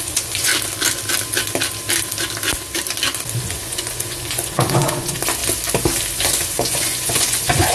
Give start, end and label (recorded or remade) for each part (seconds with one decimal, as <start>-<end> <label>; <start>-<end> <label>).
0.0-0.5 remade; 0.5-3.4 recorded; 3.4-5.4 remade; 5.4-6.1 recorded; 6.1-7.7 remade

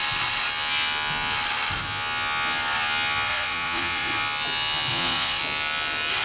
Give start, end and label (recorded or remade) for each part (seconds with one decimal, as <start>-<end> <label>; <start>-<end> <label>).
0.0-3.3 recorded; 3.3-4.1 remade; 4.1-4.9 recorded; 4.9-5.4 remade; 5.4-6.2 recorded

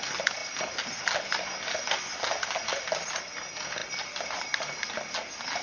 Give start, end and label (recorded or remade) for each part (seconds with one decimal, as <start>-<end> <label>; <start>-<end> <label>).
0.0-5.6 recorded

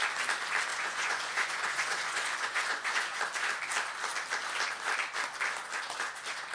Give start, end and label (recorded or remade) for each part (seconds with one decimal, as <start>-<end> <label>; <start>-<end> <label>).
0.0-0.7 recorded; 0.7-3.2 remade; 3.2-6.5 recorded

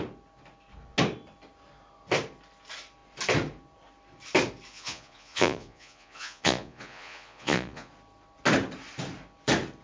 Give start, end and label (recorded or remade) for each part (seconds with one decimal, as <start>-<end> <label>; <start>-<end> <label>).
0.0-4.7 recorded; 4.7-7.9 remade; 7.9-9.8 recorded

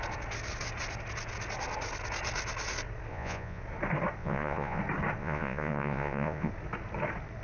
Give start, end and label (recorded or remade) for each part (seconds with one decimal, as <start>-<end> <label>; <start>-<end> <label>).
0.0-3.1 recorded; 3.1-3.6 remade; 3.6-4.2 recorded; 4.2-4.8 remade; 4.8-5.2 recorded; 5.2-6.5 remade; 6.5-7.4 recorded